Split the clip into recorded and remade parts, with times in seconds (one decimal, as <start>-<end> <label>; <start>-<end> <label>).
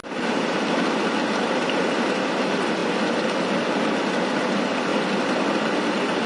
0.0-6.3 recorded